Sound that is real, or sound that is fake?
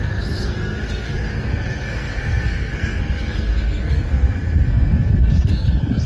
fake